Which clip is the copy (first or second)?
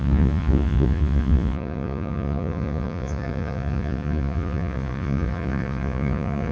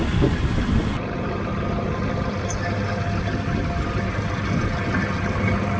first